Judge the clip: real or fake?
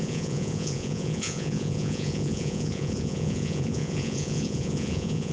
fake